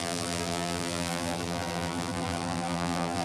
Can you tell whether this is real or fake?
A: fake